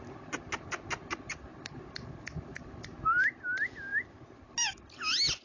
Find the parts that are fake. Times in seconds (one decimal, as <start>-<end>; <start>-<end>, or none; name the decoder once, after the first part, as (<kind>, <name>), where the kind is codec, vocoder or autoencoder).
none

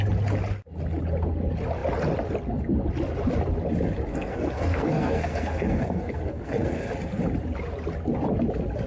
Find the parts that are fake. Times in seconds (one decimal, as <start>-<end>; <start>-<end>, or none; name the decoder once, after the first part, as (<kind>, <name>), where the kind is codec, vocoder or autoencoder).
4.1-6.9 (codec, SNAC)

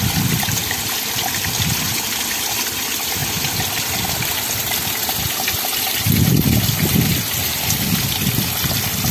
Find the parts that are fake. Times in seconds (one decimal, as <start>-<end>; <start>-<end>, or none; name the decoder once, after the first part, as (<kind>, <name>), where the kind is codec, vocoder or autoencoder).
none

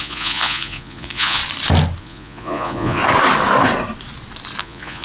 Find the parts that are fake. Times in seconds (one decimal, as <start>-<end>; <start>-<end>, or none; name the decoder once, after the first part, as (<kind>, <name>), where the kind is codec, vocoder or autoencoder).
0.0-1.4 (vocoder, Vocos); 2.0-3.0; 4.6-5.0

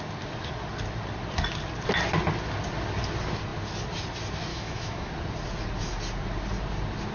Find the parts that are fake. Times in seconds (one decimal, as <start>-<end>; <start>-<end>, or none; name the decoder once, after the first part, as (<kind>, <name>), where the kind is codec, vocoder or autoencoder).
4.5-5.1 (autoencoder, DAC-VAE)

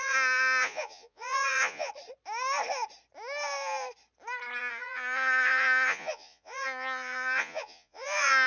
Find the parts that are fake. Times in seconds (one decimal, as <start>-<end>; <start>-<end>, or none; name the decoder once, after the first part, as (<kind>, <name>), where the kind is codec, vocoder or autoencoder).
0.0-1.9 (vocoder, Vocos); 4.6-8.5

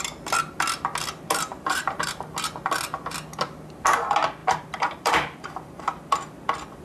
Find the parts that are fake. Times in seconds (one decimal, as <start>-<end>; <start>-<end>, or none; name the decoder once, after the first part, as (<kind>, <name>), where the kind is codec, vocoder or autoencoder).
1.5-2.3 (vocoder, BigVGAN v2); 4.4-5.8

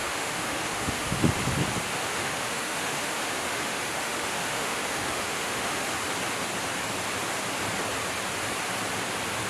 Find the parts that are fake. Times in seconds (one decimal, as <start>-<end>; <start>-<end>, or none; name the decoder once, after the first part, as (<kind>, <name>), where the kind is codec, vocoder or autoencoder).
0.0-1.3 (autoencoder, DAC-VAE); 1.9-5.9